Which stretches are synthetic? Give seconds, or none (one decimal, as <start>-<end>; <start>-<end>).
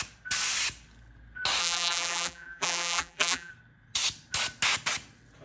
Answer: 1.6-3.5